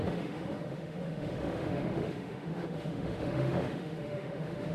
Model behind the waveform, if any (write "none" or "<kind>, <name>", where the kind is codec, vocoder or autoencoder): autoencoder, DAC-VAE